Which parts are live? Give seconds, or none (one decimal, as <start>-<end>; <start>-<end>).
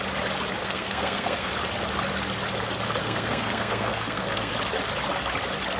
0.0-0.6; 1.5-3.0; 4.5-5.8